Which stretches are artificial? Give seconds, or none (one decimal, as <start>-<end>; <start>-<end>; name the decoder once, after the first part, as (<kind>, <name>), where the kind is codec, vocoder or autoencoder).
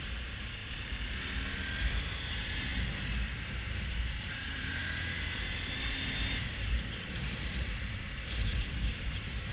0.0-0.6 (vocoder, BigVGAN v2); 1.8-2.7; 3.3-9.5